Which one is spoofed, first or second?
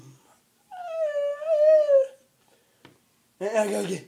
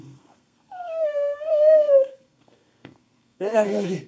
second